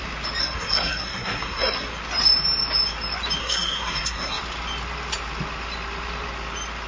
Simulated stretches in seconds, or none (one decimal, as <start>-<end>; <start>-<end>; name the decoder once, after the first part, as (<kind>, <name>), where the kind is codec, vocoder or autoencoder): 0.4-1.9 (codec, SNAC); 3.4-4.4